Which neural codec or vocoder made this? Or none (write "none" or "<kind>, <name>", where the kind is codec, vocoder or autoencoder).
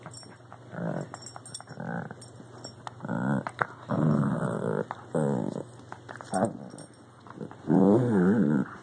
none